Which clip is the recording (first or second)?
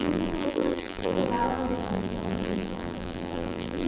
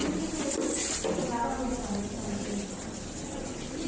second